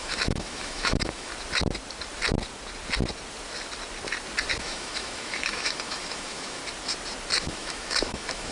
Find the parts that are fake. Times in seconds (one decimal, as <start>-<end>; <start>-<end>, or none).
0.0-1.3; 4.6-6.6; 7.4-8.5